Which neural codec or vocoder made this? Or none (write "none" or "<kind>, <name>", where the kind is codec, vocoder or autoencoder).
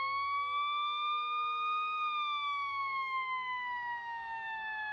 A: autoencoder, DAC-VAE